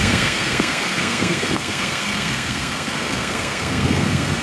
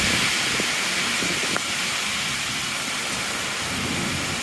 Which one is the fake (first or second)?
first